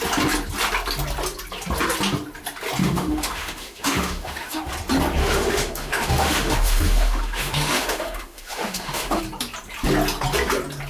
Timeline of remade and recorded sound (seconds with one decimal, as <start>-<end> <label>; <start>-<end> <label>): 0.0-2.8 recorded; 2.8-4.7 remade; 4.7-5.2 recorded; 5.2-9.2 remade; 9.2-10.9 recorded